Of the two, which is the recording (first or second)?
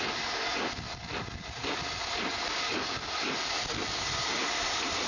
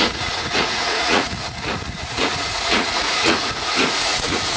first